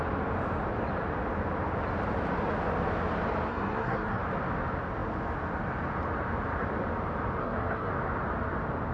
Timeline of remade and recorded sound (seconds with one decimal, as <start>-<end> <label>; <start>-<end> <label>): 0.0-3.5 recorded; 3.5-4.2 remade; 4.2-7.4 recorded; 7.4-7.9 remade; 7.9-8.9 recorded